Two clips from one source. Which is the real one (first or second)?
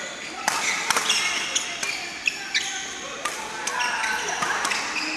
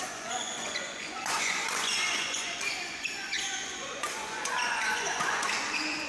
first